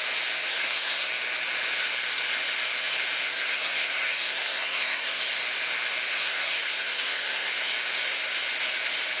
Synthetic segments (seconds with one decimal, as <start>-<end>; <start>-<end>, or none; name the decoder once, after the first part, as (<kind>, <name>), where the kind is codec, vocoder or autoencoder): 0.5-1.1 (codec, SNAC); 3.2-5.2; 6.1-7.5